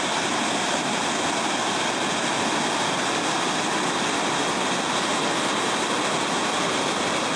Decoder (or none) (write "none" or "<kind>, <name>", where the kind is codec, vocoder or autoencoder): none